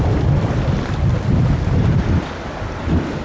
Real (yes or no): yes